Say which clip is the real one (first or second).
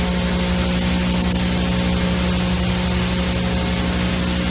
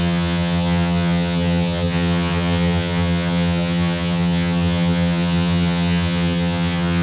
first